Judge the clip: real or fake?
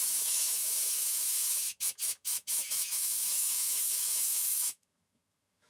fake